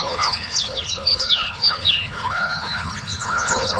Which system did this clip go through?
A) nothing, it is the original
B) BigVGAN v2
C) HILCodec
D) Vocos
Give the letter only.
C